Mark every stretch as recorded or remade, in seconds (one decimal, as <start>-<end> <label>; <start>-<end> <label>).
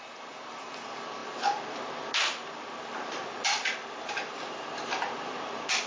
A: 0.0-5.9 recorded